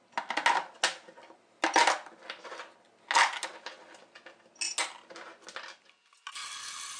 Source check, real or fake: real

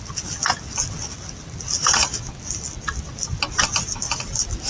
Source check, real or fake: real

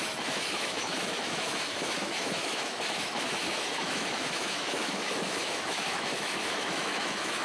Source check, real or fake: fake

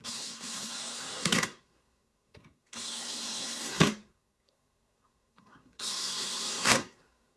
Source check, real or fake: fake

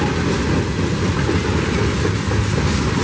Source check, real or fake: real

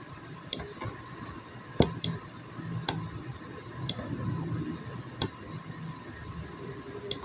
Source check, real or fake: real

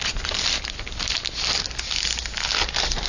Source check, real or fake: real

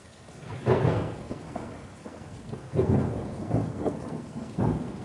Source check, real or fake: fake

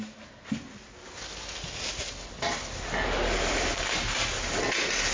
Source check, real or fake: real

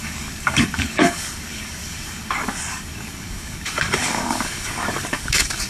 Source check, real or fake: fake